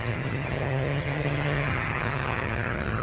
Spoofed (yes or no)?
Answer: yes